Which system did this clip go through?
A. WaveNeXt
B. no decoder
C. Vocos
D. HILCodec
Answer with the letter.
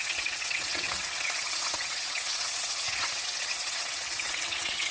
A